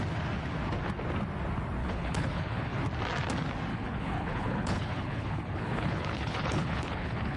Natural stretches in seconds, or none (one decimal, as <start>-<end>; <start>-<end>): 0.0-1.8; 2.8-3.7